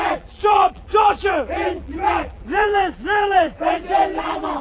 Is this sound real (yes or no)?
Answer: no